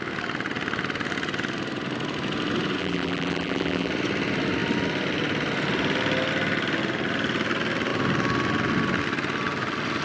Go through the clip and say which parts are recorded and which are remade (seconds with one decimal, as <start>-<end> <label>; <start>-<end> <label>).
0.0-2.8 recorded; 2.8-3.9 remade; 3.9-10.0 recorded